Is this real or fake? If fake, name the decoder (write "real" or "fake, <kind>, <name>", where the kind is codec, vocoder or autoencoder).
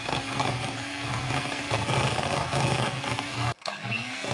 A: fake, codec, SNAC